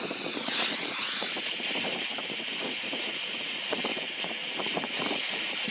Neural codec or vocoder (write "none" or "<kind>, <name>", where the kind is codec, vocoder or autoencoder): vocoder, Vocos